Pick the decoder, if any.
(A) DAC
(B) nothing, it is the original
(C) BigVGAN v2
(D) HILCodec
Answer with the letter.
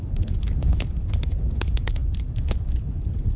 D